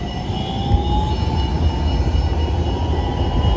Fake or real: real